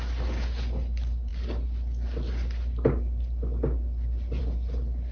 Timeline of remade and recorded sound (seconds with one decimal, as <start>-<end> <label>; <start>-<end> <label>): 0.0-5.1 recorded